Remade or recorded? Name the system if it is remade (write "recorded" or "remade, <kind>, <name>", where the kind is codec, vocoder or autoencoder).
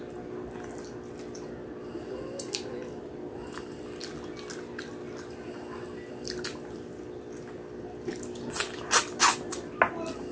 recorded